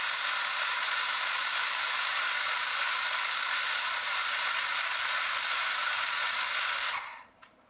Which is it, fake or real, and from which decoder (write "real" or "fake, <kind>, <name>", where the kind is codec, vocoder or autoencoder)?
fake, vocoder, BigVGAN v2